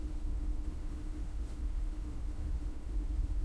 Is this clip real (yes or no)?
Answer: no